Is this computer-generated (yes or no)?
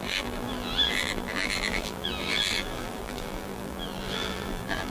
yes